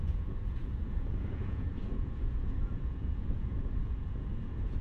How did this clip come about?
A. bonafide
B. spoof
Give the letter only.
B